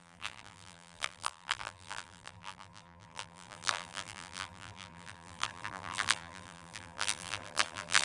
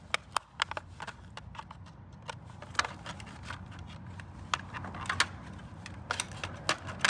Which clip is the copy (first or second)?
first